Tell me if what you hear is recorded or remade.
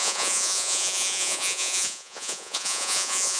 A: remade